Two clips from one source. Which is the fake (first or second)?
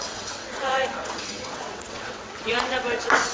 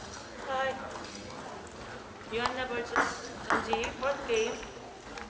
first